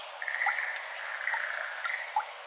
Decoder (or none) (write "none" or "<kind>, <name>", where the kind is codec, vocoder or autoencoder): none